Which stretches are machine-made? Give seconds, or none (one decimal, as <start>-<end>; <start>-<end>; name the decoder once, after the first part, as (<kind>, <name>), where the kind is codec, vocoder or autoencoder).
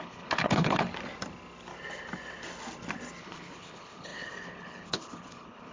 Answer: 0.0-0.9 (codec, HILCodec); 3.2-5.7